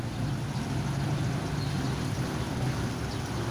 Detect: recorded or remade recorded